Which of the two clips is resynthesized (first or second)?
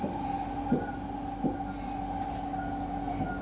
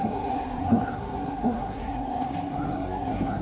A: second